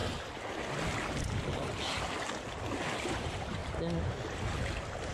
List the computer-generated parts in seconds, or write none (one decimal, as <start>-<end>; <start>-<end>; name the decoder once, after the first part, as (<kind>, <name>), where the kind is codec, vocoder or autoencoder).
3.1-3.6 (vocoder, BigVGAN v2)